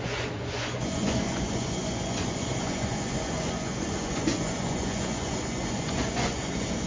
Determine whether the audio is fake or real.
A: fake